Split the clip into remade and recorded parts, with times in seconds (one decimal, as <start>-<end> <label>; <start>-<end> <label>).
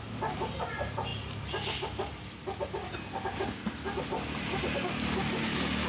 0.0-5.9 recorded